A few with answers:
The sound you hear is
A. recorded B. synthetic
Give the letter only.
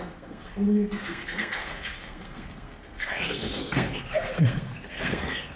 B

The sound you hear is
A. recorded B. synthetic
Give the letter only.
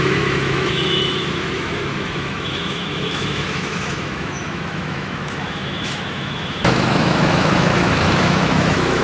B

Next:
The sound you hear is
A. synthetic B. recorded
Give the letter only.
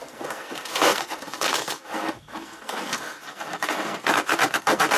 A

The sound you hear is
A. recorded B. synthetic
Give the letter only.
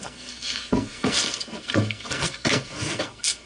B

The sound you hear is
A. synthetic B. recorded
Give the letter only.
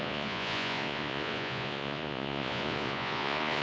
A